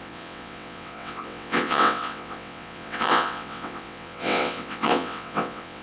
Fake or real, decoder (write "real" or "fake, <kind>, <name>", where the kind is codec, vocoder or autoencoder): fake, vocoder, WaveNeXt